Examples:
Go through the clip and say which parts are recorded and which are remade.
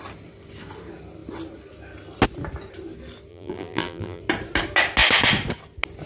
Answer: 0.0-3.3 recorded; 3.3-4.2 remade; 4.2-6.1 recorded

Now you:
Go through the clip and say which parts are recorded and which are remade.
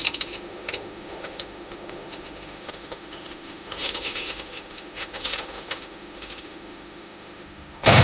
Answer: 0.0-8.0 remade